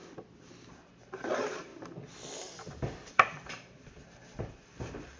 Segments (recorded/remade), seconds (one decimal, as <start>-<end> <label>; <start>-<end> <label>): 0.0-0.7 recorded; 0.7-1.7 remade; 1.7-3.1 recorded; 3.1-5.2 remade